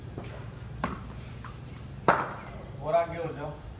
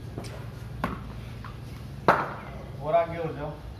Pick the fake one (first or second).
first